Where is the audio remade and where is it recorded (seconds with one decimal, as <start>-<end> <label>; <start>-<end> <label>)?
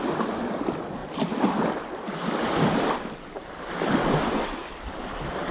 0.0-5.5 recorded